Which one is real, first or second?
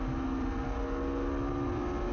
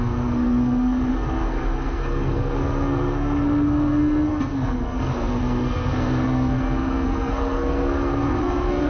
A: first